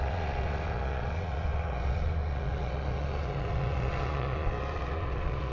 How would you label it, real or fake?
fake